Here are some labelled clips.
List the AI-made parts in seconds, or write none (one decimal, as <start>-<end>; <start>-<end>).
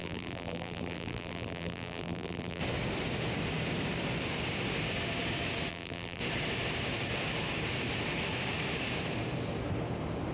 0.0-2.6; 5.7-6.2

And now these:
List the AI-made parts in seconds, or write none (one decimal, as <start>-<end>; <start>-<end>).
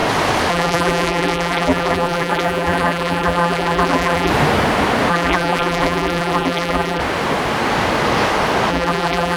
0.5-4.3; 5.1-7.0; 8.7-9.4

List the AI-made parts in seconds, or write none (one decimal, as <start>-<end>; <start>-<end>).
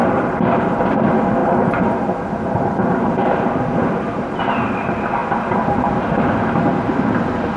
0.0-0.8; 1.4-4.3